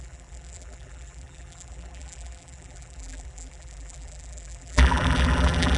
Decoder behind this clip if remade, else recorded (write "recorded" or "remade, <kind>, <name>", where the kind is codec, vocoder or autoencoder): remade, vocoder, BigVGAN v2